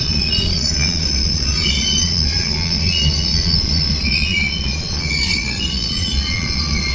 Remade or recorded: remade